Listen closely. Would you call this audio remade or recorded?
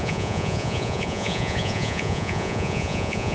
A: remade